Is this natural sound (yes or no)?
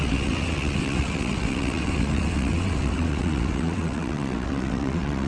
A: no